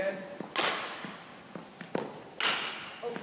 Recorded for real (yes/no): yes